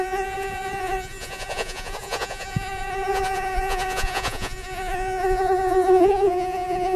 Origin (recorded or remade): remade